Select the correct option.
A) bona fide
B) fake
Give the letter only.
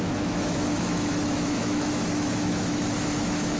B